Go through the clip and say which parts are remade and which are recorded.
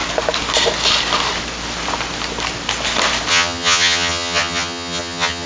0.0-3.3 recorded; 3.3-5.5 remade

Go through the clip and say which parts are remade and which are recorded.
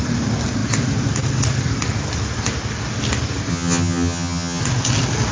0.0-3.5 recorded; 3.5-4.6 remade; 4.6-5.3 recorded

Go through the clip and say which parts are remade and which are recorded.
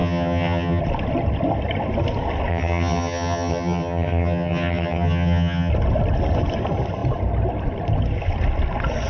0.0-0.8 remade; 0.8-2.5 recorded; 2.5-5.7 remade; 5.7-9.1 recorded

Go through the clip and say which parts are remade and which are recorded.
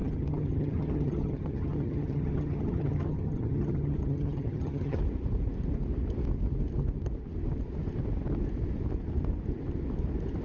0.0-5.0 remade; 5.0-10.4 recorded